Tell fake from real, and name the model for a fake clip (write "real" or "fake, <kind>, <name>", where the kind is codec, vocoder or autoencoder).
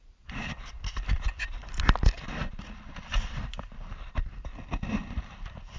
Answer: real